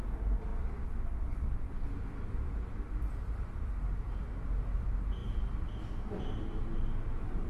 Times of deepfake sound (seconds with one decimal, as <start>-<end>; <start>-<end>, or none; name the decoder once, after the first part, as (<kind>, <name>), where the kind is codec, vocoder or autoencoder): none